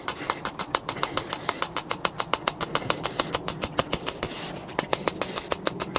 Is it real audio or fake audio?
real